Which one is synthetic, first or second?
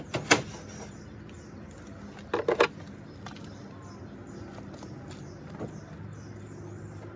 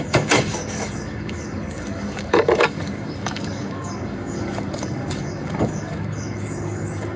second